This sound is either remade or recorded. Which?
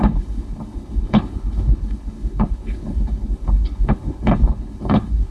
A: remade